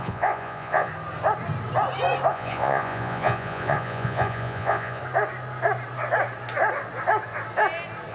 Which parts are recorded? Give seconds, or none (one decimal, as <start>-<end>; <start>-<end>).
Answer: 0.9-2.3; 5.0-8.1